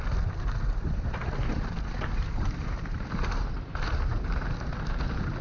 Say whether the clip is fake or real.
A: real